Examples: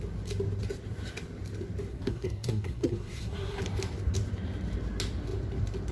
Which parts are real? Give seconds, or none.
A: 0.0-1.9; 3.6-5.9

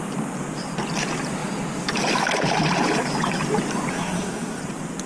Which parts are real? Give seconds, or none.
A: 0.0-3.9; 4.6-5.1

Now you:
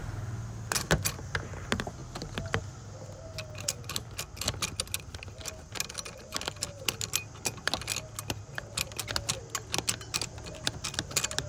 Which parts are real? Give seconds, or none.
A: 0.0-11.5